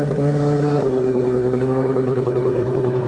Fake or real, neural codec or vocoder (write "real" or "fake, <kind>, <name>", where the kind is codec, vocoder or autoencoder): fake, codec, SNAC